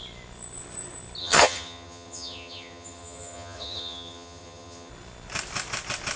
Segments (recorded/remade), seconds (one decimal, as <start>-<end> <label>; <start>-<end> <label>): 0.0-1.2 recorded; 1.2-4.9 remade; 4.9-6.2 recorded